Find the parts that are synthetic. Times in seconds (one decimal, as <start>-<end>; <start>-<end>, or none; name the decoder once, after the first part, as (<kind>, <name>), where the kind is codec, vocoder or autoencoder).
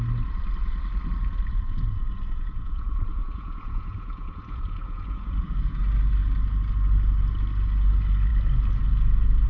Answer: 1.5-5.8 (vocoder, Vocos)